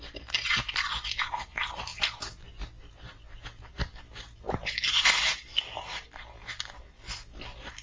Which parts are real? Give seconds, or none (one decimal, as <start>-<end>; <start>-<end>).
0.0-7.8